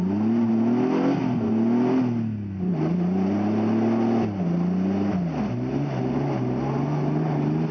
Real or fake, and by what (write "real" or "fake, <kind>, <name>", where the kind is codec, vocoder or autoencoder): real